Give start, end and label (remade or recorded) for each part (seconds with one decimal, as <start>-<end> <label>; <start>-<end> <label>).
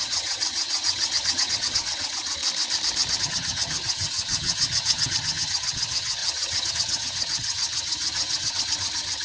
0.0-2.4 remade; 2.4-3.2 recorded; 3.2-9.2 remade